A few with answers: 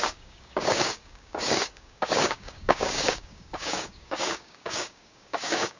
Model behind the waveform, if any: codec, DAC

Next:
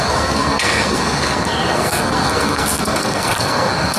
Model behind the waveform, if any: codec, SNAC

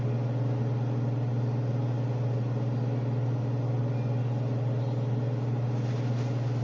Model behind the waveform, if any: none